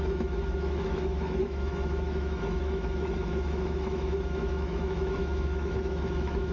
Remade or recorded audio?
remade